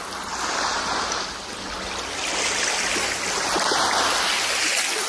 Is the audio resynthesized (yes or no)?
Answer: no